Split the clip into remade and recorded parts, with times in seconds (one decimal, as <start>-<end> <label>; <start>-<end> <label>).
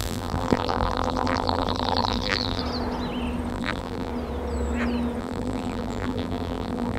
0.0-2.6 remade; 2.6-3.5 recorded; 3.5-4.1 remade; 4.1-5.2 recorded; 5.2-7.0 remade